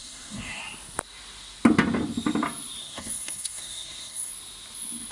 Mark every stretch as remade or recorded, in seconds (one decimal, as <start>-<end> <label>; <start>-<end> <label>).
0.0-0.6 remade; 0.6-2.8 recorded; 2.8-4.3 remade; 4.3-5.1 recorded

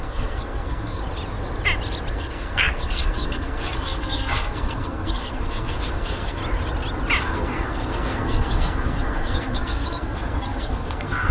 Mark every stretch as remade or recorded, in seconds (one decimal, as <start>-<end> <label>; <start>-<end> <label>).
0.0-1.0 remade; 1.0-2.1 recorded; 2.1-6.4 remade; 6.4-7.2 recorded; 7.2-11.3 remade

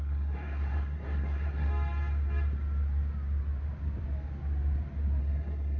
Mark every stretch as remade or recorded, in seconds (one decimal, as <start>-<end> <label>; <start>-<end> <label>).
0.0-1.7 remade; 1.7-5.2 recorded; 5.2-5.8 remade

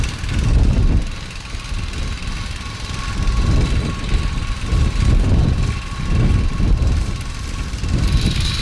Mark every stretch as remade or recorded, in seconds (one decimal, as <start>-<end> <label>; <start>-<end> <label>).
0.0-8.6 recorded

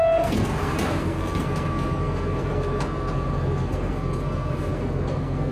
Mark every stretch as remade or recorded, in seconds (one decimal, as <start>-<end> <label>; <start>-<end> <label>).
0.0-5.5 remade

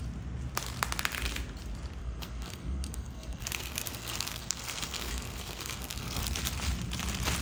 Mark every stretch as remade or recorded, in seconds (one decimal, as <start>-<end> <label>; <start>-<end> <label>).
0.0-2.0 recorded; 2.0-6.2 remade; 6.2-7.4 recorded

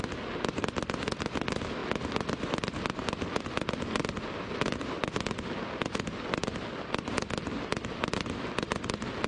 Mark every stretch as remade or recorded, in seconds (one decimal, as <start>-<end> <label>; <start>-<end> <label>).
0.0-9.3 recorded

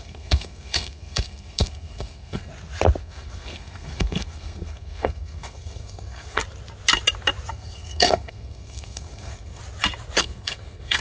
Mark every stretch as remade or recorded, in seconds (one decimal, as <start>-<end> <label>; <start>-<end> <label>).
0.0-2.5 remade; 2.5-3.0 recorded; 3.0-6.4 remade; 6.4-7.5 recorded; 7.5-9.6 remade; 9.6-10.2 recorded; 10.2-11.0 remade